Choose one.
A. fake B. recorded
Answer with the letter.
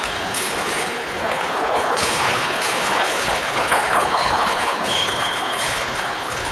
A